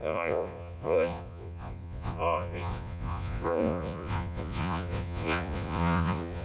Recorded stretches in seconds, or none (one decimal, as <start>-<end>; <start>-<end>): none